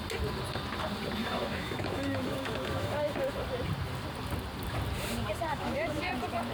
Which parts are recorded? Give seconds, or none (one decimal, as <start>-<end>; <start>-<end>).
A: 0.0-1.2; 3.3-5.5; 6.1-6.5